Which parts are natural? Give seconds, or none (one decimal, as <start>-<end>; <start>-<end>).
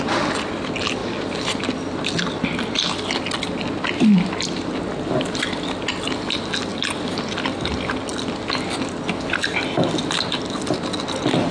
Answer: 0.0-11.5